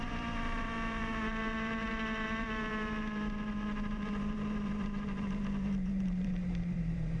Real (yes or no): no